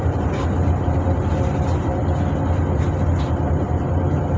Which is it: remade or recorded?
recorded